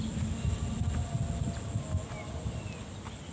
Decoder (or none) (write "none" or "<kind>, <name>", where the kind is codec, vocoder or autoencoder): none